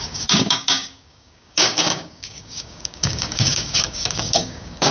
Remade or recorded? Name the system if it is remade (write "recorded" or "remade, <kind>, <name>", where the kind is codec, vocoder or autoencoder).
remade, codec, DAC